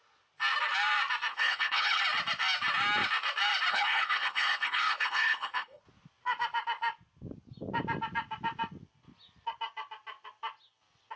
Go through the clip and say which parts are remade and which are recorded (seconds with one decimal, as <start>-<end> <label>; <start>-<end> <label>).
0.0-1.3 recorded; 1.3-2.0 remade; 2.0-3.7 recorded; 3.7-5.8 remade; 5.8-11.2 recorded